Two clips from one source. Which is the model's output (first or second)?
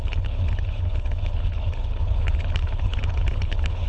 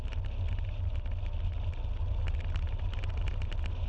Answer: first